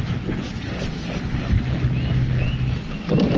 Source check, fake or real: real